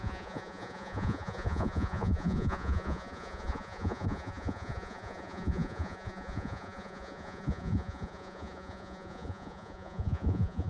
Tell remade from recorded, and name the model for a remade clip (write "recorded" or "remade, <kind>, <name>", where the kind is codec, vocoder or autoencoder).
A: remade, vocoder, Vocos